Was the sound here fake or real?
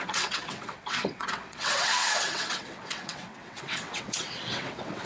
fake